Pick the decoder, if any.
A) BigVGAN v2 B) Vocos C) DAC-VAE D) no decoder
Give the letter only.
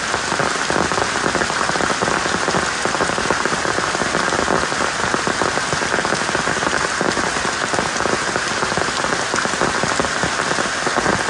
D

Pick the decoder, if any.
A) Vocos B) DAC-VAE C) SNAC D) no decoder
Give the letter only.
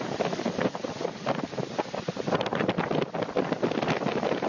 D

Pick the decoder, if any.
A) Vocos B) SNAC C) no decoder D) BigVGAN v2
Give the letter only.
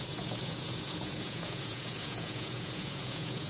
A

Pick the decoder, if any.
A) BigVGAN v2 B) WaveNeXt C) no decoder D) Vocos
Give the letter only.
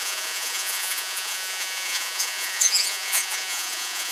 D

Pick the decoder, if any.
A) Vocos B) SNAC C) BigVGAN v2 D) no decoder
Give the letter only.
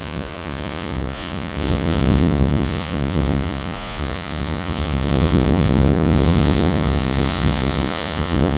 A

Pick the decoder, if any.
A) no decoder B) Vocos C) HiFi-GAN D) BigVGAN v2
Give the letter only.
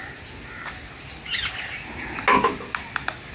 A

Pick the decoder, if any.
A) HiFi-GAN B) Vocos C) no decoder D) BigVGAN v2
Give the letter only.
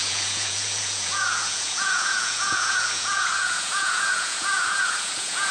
B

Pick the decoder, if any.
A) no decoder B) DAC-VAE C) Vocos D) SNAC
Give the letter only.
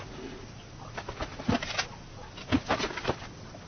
A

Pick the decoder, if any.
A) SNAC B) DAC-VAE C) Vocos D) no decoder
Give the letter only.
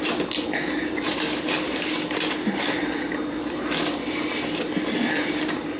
D